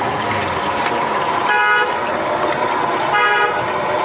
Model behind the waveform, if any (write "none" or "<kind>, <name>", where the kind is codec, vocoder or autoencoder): none